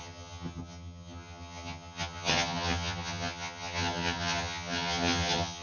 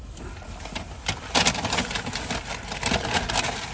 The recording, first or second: second